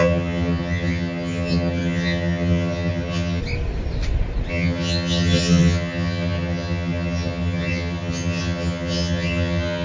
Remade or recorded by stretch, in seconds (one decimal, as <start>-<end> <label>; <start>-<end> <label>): 0.0-3.4 remade; 3.4-4.5 recorded; 4.5-9.8 remade